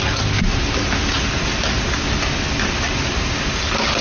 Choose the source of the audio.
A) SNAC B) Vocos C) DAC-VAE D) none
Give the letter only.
D